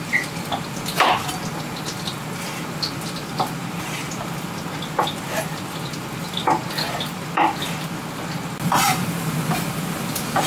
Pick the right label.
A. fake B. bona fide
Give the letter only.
B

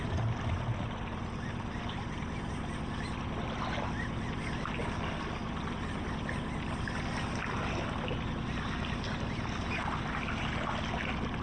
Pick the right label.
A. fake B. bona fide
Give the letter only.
B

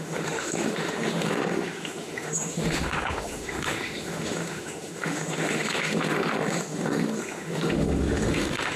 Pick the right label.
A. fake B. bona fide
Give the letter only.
A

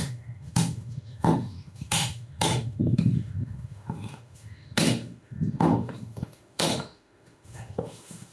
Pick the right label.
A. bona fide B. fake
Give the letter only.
B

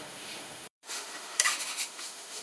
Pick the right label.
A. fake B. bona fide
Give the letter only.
A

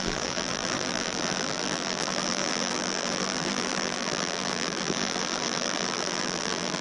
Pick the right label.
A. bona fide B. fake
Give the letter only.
B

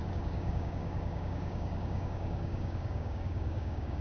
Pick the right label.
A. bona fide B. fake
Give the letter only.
B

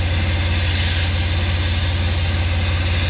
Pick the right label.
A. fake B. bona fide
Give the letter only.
B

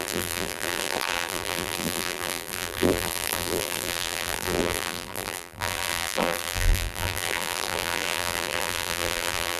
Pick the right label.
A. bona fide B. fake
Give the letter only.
B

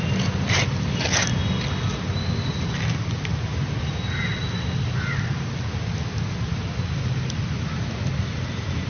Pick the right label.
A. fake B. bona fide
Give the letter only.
B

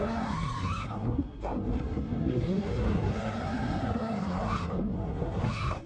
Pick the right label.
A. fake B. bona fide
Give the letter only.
A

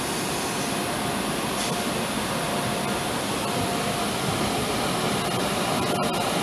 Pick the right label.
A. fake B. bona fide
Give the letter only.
B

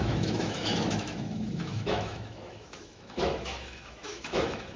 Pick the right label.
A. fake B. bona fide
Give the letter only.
A